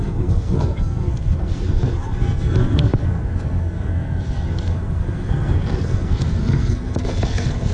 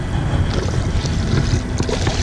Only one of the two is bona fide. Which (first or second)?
second